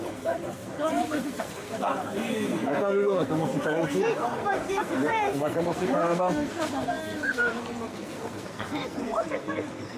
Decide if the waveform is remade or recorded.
remade